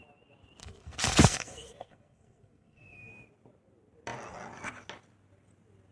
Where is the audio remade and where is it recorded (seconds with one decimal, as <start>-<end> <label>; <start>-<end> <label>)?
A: 0.0-0.6 recorded; 0.6-3.1 remade; 3.1-5.9 recorded